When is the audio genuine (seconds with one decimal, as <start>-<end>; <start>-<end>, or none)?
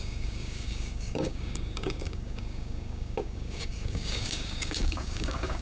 none